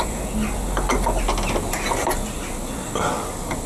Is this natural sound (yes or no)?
yes